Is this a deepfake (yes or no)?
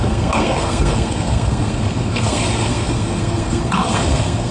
yes